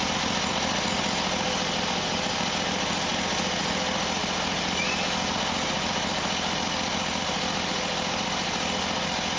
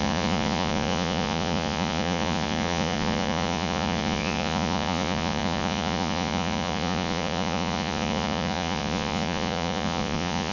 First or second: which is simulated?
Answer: second